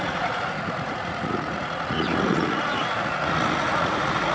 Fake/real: fake